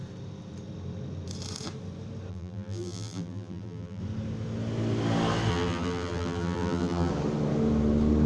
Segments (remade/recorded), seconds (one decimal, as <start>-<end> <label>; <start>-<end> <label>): 0.0-2.3 recorded; 2.3-4.0 remade; 4.0-5.5 recorded; 5.5-7.1 remade; 7.1-8.3 recorded